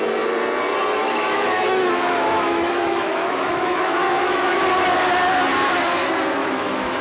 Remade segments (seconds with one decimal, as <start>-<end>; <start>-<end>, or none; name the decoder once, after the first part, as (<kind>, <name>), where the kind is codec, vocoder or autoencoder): 1.0-4.6 (autoencoder, DAC-VAE); 6.4-7.0